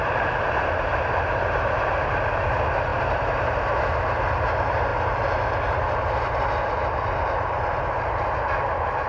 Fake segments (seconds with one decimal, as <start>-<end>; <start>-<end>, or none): 0.0-4.9; 8.0-9.1